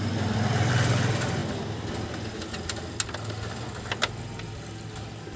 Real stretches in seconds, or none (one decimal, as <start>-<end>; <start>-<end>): 0.0-5.4